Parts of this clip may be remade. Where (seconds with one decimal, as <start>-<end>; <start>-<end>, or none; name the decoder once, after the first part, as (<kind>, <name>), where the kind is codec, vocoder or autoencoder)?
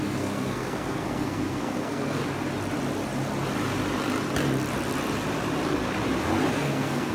0.0-2.2 (codec, SNAC); 6.5-7.1